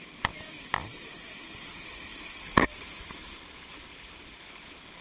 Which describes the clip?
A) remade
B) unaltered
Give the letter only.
B